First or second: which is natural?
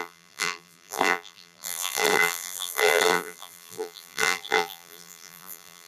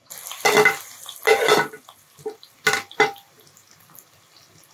second